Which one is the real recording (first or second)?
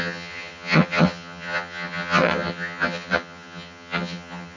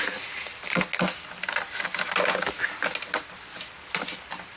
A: second